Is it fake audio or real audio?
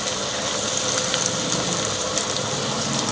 real